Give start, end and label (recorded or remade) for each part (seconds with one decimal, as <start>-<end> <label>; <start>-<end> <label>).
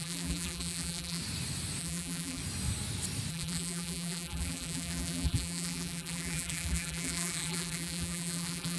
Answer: 0.0-1.2 remade; 1.2-1.8 recorded; 1.8-2.4 remade; 2.4-3.3 recorded; 3.3-8.8 remade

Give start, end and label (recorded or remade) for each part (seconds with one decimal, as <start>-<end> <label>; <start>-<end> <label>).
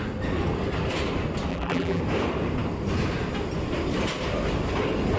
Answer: 0.0-1.5 recorded; 1.5-2.0 remade; 2.0-5.2 recorded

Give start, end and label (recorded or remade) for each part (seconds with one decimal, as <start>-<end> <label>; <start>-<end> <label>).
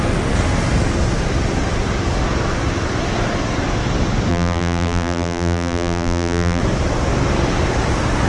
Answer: 0.0-4.3 recorded; 4.3-6.6 remade; 6.6-8.3 recorded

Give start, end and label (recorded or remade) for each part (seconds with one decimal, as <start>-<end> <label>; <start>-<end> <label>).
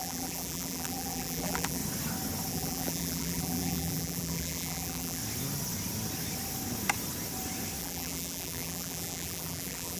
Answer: 0.0-1.8 remade; 1.8-2.5 recorded; 2.5-5.2 remade; 5.2-7.8 recorded; 7.8-10.0 remade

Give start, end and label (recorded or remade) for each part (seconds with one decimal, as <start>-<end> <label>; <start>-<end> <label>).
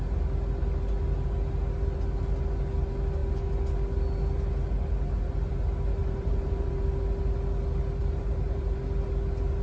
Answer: 0.0-6.0 recorded; 6.0-6.7 remade; 6.7-8.0 recorded; 8.0-8.8 remade; 8.8-9.6 recorded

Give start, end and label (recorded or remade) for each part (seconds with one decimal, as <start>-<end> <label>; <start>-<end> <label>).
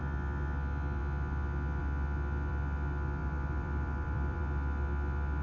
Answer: 0.0-3.2 recorded; 3.2-4.4 remade; 4.4-5.4 recorded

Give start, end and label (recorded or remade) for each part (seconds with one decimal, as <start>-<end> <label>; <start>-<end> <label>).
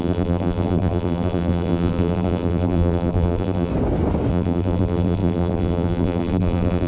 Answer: 0.0-3.7 remade; 3.7-4.3 recorded; 4.3-6.9 remade